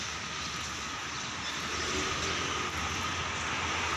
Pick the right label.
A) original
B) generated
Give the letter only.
A